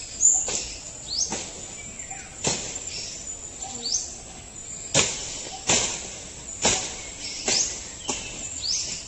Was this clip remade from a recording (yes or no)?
no